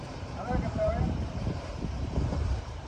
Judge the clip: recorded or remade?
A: remade